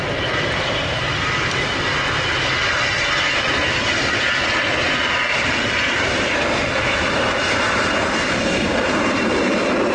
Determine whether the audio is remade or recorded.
remade